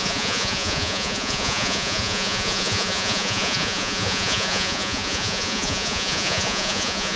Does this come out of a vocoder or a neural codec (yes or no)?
yes